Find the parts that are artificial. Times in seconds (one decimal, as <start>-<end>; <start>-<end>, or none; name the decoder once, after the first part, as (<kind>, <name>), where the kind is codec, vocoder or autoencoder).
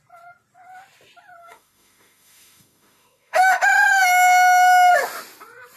1.4-4.9 (autoencoder, DAC-VAE)